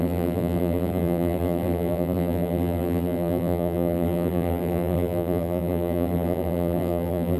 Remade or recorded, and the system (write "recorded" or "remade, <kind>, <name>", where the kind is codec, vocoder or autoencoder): remade, vocoder, BigVGAN v2